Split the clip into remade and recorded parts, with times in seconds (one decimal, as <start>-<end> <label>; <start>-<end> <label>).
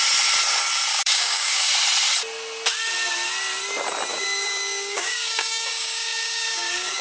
0.0-0.9 recorded; 0.9-1.7 remade; 1.7-4.1 recorded; 4.1-7.0 remade